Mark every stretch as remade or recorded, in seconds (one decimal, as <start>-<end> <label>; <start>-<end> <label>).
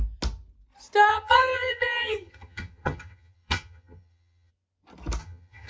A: 0.0-1.1 recorded; 1.1-4.5 remade; 4.5-5.2 recorded; 5.2-5.7 remade